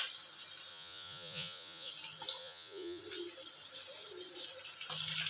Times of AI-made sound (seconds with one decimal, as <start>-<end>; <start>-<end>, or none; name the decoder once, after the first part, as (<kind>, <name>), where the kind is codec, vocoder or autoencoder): 0.7-1.9 (vocoder, Vocos); 2.4-3.0